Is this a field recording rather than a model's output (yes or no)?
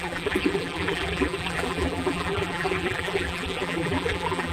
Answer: no